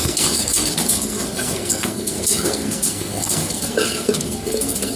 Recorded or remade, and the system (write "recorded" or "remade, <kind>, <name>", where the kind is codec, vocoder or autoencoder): remade, codec, SNAC